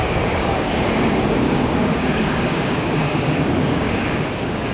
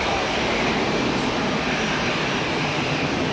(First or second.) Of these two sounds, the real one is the second